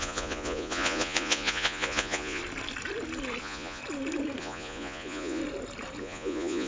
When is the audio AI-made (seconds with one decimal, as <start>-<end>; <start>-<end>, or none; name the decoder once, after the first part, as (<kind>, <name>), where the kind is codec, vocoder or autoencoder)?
0.0-2.4 (vocoder, Vocos); 3.4-3.8; 4.4-5.4; 6.0-6.7